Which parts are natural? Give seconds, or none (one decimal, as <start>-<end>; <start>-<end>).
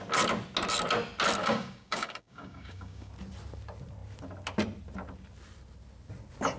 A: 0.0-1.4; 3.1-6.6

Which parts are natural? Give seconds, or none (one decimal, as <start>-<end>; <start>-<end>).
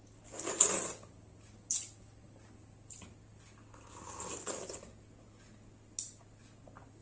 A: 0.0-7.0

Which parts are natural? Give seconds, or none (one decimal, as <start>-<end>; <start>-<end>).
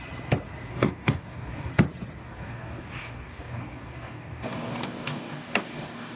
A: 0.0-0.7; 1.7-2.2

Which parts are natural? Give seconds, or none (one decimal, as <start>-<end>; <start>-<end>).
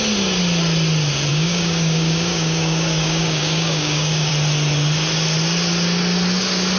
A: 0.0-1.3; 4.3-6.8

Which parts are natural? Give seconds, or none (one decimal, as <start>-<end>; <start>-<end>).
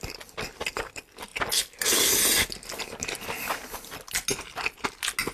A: 0.0-5.3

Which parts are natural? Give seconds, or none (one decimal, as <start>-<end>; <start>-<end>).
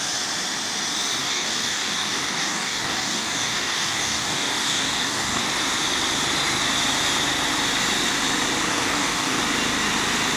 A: 0.0-1.2; 5.4-8.7; 9.4-10.4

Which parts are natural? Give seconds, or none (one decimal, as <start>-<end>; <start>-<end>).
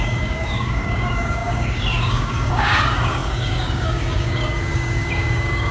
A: none